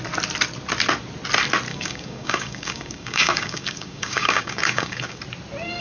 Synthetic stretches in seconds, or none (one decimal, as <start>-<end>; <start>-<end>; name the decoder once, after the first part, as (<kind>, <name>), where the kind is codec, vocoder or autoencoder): 1.7-5.2 (codec, DAC)